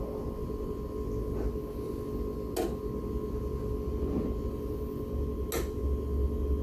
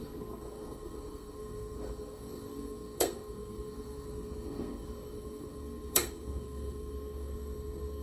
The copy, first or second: second